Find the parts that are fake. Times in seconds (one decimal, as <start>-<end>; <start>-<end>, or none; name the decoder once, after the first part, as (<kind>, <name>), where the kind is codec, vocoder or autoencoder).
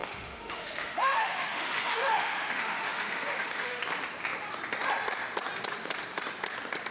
0.0-3.8 (autoencoder, DAC-VAE)